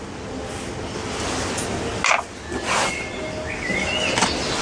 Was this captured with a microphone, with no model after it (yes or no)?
yes